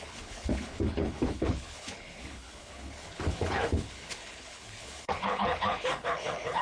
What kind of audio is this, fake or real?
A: fake